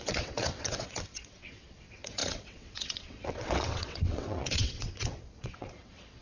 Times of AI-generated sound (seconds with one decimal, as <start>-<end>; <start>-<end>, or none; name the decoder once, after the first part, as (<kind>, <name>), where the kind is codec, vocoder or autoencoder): 0.0-6.2 (vocoder, WaveNeXt)